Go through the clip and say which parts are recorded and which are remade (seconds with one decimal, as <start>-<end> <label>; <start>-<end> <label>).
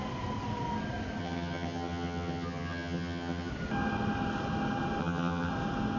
0.0-1.2 recorded; 1.2-3.5 remade; 3.5-5.0 recorded; 5.0-5.5 remade; 5.5-6.0 recorded